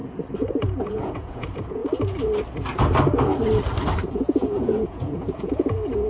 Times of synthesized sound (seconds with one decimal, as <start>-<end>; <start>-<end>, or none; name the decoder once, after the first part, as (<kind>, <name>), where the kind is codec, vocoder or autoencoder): 0.5-1.8 (vocoder, Vocos); 4.1-6.1